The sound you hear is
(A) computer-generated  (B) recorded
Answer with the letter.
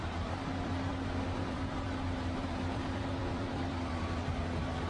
A